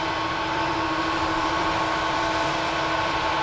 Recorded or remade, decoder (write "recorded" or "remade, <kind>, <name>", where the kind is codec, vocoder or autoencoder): remade, vocoder, BigVGAN v2